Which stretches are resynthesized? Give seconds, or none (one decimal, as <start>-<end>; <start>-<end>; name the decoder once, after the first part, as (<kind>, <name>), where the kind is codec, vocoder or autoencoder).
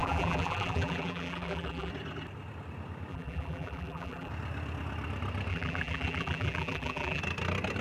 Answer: 0.0-1.9 (vocoder, BigVGAN v2); 3.1-4.3; 5.5-7.2